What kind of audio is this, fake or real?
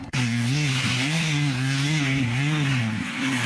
fake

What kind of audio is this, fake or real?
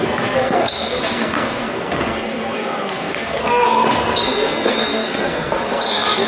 fake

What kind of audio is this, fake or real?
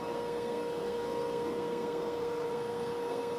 fake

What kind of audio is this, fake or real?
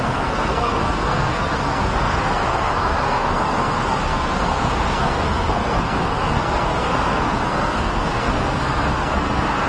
fake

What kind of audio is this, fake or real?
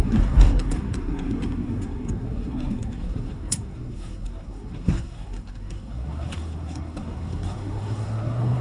fake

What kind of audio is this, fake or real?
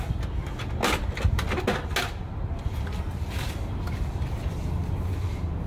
real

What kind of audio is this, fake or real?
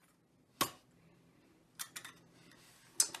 real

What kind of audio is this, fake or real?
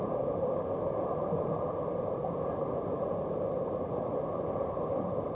real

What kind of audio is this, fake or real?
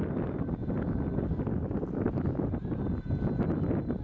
real